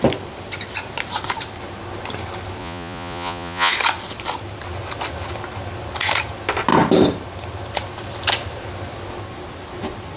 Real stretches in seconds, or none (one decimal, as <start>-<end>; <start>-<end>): 0.0-2.6; 3.7-10.2